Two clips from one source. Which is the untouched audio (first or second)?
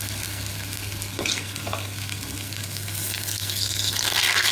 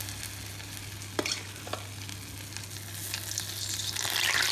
second